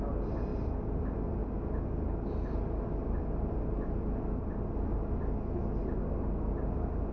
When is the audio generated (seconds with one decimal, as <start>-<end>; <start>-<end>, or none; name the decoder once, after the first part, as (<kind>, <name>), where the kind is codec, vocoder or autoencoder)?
none